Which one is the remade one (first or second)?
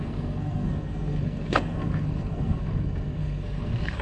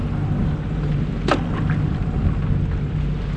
first